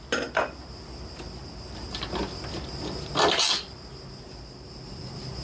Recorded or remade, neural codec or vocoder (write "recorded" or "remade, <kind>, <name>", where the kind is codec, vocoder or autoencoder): recorded